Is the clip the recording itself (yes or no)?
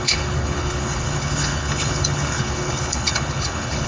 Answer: no